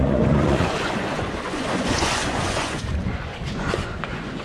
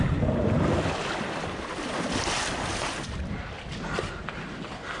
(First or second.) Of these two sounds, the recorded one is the second